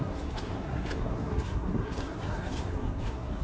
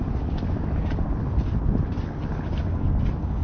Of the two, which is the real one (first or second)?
second